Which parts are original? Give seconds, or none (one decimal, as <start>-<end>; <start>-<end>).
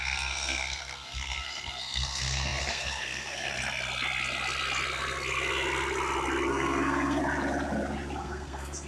3.5-6.5; 7.2-8.2